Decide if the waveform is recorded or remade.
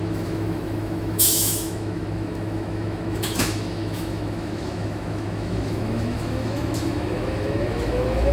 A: remade